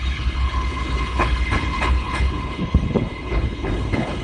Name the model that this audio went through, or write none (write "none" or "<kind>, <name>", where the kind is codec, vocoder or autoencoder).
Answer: codec, HILCodec